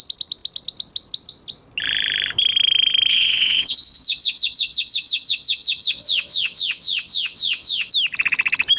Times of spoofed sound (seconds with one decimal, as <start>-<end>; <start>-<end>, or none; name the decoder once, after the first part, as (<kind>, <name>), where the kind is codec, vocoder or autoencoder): 3.1-7.9 (vocoder, WaveNeXt)